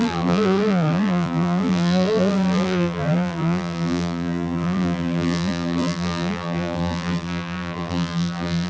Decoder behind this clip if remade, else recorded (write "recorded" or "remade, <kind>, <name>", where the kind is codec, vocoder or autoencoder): remade, vocoder, BigVGAN v2